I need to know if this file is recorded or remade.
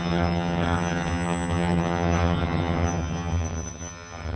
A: remade